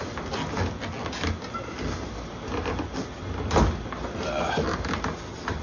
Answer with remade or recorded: recorded